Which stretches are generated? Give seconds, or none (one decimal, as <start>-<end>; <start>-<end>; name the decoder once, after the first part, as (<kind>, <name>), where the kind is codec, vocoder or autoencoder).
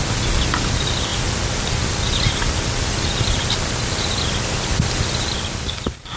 none